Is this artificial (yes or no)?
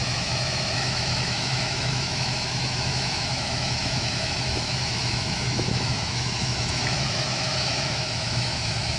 yes